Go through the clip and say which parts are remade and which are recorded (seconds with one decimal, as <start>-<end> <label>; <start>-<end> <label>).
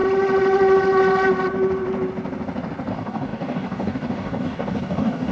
0.0-2.9 recorded; 2.9-5.3 remade